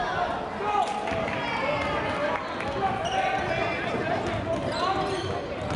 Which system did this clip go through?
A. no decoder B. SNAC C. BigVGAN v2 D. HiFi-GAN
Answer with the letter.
A